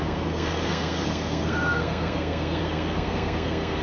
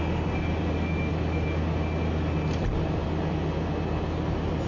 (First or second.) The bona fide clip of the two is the second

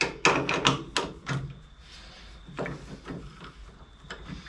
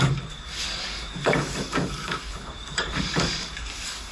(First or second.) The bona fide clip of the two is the first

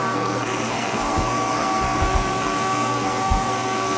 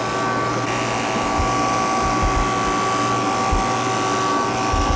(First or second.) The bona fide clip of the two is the second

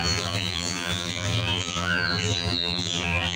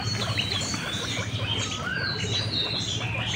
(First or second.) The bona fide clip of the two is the second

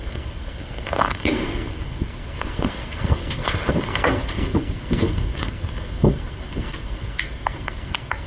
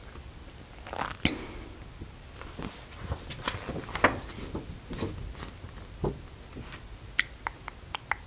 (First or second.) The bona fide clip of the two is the second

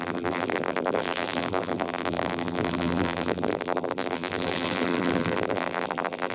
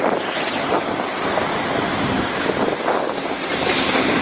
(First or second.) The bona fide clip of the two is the second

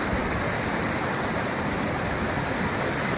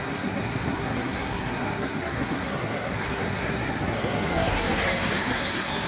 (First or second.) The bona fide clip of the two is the first